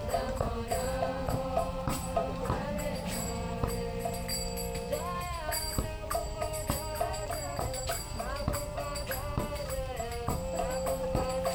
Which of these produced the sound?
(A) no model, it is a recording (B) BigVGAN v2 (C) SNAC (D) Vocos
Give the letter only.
B